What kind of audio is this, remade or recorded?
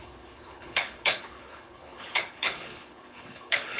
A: remade